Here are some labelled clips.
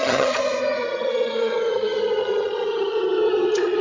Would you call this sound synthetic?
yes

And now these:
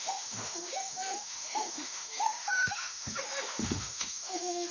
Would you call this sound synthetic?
yes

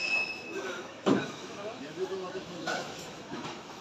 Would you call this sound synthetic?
yes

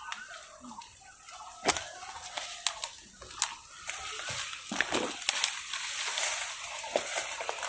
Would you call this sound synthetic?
no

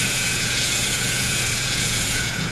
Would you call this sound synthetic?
yes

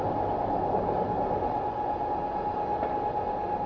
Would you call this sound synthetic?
no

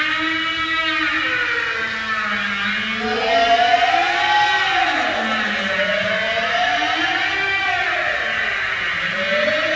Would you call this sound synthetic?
no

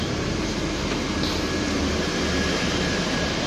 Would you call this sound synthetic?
no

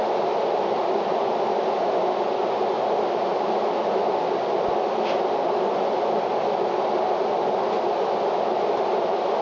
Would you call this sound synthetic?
no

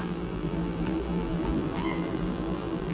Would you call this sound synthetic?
yes